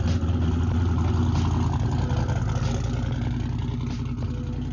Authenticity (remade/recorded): recorded